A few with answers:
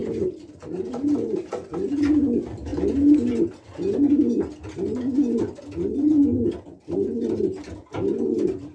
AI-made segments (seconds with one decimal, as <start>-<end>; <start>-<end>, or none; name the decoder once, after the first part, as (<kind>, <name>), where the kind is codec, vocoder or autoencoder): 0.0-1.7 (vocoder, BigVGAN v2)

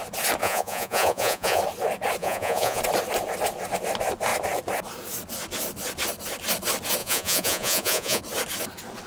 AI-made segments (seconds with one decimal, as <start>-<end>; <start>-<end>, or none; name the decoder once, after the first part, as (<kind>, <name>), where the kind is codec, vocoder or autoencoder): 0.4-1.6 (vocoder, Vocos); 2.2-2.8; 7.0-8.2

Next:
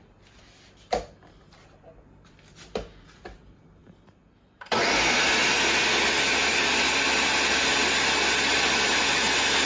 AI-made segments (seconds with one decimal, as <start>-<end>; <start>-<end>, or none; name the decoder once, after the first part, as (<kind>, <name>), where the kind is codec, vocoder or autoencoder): none

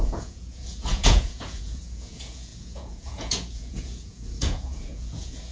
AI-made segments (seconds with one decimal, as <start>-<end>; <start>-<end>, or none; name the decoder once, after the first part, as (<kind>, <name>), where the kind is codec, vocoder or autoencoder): 0.0-5.5 (vocoder, Vocos)